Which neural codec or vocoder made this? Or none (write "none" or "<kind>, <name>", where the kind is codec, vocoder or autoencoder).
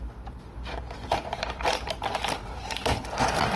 none